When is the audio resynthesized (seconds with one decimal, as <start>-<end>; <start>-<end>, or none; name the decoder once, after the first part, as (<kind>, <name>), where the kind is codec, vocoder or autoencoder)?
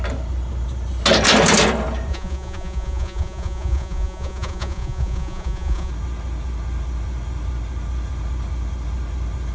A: 2.1-5.9 (vocoder, Vocos)